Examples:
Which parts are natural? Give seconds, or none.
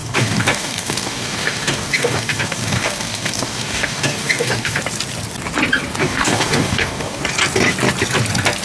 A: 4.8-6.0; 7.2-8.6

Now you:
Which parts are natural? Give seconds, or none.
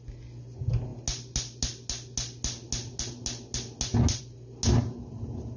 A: 0.0-5.6